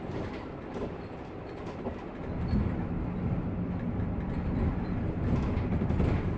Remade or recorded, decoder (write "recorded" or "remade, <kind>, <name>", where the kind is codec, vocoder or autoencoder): recorded